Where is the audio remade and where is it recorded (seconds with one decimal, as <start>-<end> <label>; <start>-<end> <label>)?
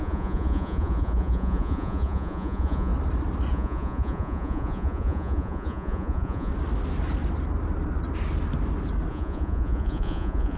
0.0-2.9 remade; 2.9-3.5 recorded; 3.5-6.5 remade; 6.5-9.1 recorded; 9.1-10.6 remade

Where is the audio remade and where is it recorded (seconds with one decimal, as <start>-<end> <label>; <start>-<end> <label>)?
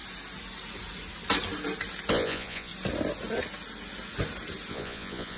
0.0-2.1 recorded; 2.1-2.7 remade; 2.7-4.7 recorded; 4.7-5.4 remade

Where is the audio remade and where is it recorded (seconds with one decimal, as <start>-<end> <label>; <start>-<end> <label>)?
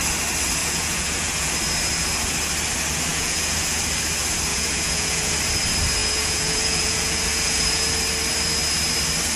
0.0-0.6 recorded; 0.6-1.5 remade; 1.5-3.1 recorded; 3.1-3.8 remade; 3.8-4.5 recorded; 4.5-5.3 remade; 5.3-6.0 recorded; 6.0-7.9 remade; 7.9-9.4 recorded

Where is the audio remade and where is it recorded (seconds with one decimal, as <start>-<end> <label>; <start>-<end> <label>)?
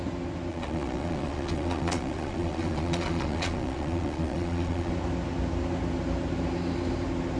0.0-0.5 recorded; 0.5-4.9 remade; 4.9-7.4 recorded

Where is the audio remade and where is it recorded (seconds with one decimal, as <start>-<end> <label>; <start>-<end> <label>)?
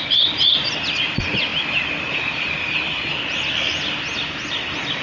0.0-5.0 recorded